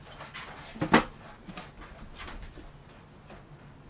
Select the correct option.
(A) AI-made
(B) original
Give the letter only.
B